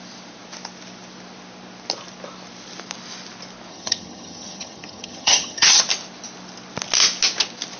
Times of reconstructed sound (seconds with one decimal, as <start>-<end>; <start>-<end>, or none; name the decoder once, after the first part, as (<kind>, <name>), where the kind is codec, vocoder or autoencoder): 3.7-5.8 (vocoder, HiFi-GAN)